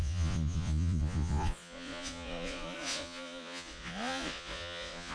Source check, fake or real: fake